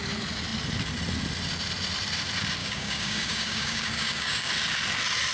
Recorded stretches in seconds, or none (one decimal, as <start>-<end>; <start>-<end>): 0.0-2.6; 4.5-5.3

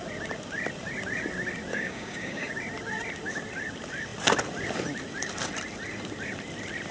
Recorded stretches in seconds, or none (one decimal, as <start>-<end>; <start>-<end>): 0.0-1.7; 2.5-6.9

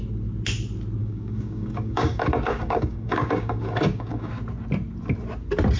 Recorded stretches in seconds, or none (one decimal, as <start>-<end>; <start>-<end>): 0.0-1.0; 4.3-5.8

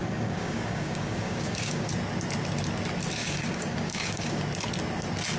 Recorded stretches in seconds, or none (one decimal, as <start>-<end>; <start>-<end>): 1.9-3.2; 4.4-5.4

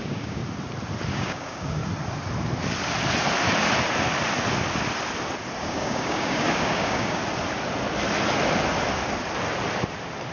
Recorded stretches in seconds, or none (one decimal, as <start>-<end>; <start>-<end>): 0.4-1.1; 1.8-5.6; 7.2-10.3

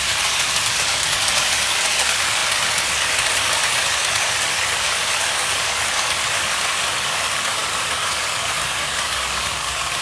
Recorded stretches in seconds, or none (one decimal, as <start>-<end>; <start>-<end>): none